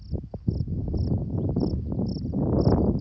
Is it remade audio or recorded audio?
recorded